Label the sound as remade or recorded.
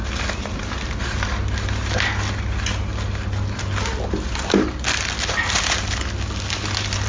recorded